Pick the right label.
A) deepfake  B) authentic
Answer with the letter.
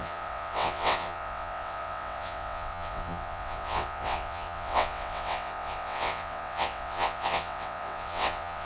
A